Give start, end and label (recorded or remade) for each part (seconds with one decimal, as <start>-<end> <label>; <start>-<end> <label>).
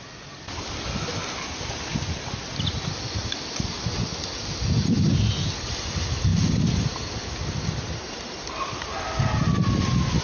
0.0-10.2 recorded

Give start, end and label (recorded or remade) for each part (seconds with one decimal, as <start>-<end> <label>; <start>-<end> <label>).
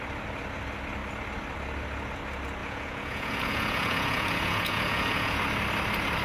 0.0-2.6 recorded; 2.6-5.4 remade; 5.4-6.2 recorded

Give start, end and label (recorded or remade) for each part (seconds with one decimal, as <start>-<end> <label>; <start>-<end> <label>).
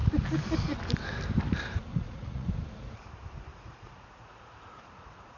0.0-1.9 recorded; 1.9-2.5 remade; 2.5-3.5 recorded; 3.5-5.4 remade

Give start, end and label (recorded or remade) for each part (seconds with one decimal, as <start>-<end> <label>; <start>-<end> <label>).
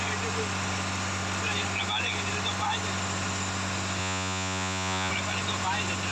0.0-4.0 recorded; 4.0-5.1 remade; 5.1-6.1 recorded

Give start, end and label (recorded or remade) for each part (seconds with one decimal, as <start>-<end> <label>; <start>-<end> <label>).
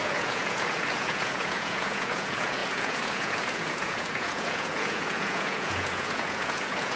0.0-7.0 remade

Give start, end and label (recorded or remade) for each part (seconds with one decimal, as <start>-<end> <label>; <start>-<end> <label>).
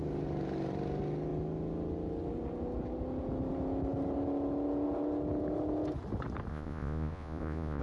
0.0-6.5 recorded; 6.5-7.8 remade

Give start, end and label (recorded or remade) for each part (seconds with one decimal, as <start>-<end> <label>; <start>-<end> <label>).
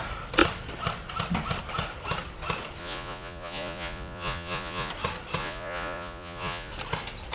0.0-2.8 recorded; 2.8-4.9 remade; 4.9-5.4 recorded; 5.4-6.7 remade; 6.7-7.3 recorded